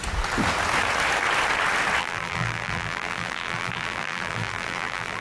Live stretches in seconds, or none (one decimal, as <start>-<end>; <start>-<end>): 0.0-2.0